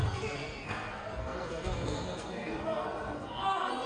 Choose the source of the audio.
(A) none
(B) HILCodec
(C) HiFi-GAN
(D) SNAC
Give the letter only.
D